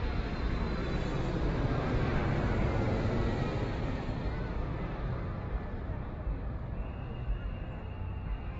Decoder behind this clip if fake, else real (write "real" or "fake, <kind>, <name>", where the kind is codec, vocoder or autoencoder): real